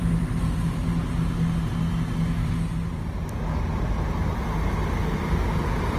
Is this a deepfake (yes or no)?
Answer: no